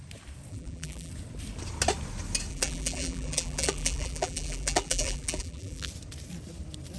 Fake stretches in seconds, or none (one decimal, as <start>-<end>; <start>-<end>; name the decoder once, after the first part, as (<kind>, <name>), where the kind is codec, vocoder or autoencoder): 0.5-1.1 (vocoder, BigVGAN v2); 2.5-5.9